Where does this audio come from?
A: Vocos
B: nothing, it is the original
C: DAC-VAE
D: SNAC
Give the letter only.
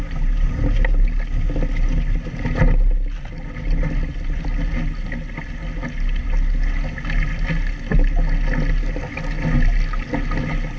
B